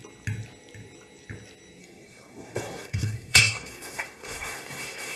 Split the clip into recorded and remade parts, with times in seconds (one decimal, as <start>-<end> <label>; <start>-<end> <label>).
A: 0.0-1.8 recorded; 1.8-5.2 remade